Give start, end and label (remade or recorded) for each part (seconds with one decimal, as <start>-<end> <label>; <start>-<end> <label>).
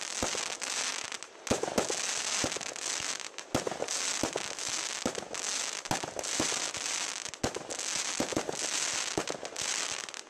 0.0-10.3 recorded